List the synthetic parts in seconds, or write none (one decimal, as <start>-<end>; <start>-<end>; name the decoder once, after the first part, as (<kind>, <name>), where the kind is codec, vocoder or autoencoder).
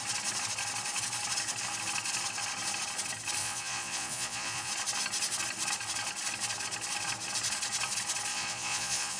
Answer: 3.4-4.7 (vocoder, Vocos); 8.3-9.2